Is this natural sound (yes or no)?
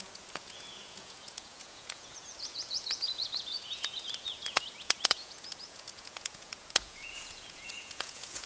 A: no